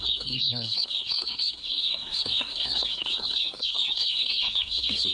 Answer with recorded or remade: remade